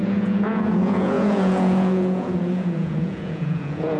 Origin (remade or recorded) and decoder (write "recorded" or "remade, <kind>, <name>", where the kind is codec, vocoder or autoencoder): remade, vocoder, Vocos